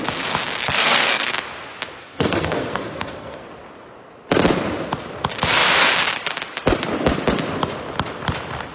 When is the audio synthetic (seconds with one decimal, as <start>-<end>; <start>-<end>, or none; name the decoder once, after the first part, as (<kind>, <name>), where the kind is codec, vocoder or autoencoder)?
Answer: 0.6-1.3 (codec, SNAC); 2.0-3.5